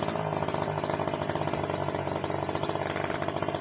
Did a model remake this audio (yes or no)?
no